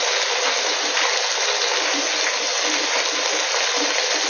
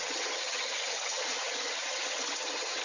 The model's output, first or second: second